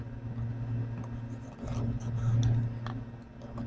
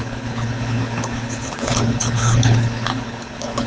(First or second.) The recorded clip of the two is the first